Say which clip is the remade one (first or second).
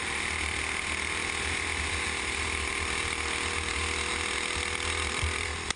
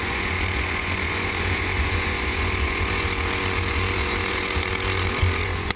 second